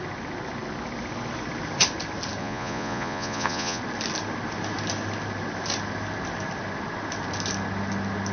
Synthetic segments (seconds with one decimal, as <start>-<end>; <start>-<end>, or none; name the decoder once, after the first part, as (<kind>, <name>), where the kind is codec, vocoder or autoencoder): 2.4-3.8 (vocoder, Vocos)